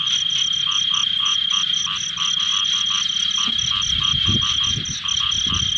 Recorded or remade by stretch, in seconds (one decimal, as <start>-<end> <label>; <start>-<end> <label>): 0.0-5.8 recorded